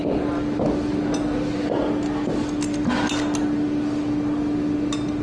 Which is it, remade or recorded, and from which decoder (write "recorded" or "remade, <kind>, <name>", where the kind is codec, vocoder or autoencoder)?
recorded